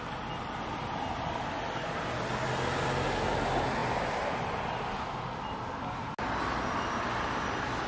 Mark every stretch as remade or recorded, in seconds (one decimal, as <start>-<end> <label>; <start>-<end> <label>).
0.0-7.9 recorded

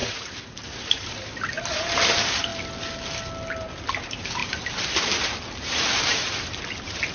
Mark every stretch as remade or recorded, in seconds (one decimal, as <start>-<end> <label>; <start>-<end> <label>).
0.0-2.5 remade; 2.5-3.9 recorded; 3.9-7.1 remade

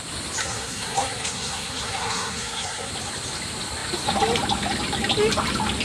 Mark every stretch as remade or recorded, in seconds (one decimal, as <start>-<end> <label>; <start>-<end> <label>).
0.0-0.4 recorded; 0.4-2.9 remade; 2.9-5.8 recorded

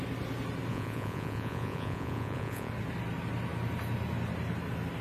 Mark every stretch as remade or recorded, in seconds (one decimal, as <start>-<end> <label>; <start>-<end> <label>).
0.0-0.7 recorded; 0.7-2.7 remade; 2.7-5.0 recorded

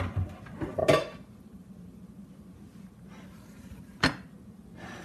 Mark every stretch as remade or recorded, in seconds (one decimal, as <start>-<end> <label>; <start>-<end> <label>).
0.0-5.0 recorded

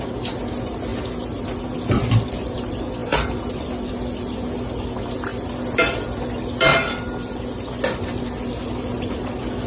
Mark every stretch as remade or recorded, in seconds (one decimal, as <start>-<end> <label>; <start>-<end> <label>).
0.0-9.7 recorded

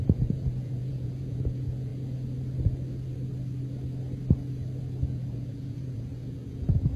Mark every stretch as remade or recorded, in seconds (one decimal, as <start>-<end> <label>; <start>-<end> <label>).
0.0-1.9 remade; 1.9-4.9 recorded; 4.9-7.0 remade

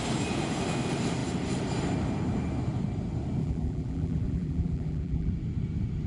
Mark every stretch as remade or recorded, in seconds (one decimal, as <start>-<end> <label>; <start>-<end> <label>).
0.0-3.4 recorded; 3.4-5.3 remade; 5.3-6.1 recorded